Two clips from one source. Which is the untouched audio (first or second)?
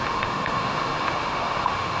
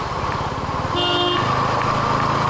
second